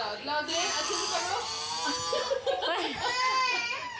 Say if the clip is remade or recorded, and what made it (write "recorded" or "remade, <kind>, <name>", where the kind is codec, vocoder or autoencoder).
recorded